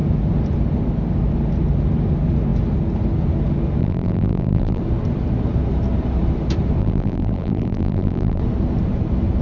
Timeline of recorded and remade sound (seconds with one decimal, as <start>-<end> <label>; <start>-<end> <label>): 0.0-3.8 recorded; 3.8-4.8 remade; 4.8-6.8 recorded; 6.8-8.4 remade; 8.4-9.4 recorded